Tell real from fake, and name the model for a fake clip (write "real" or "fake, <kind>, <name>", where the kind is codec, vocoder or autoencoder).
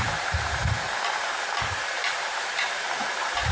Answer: fake, vocoder, BigVGAN v2